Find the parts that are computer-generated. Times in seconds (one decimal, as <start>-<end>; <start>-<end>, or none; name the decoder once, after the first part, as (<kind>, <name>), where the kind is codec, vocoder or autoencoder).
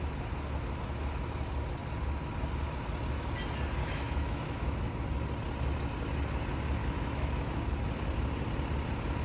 3.8-4.9 (autoencoder, DAC-VAE); 6.8-7.5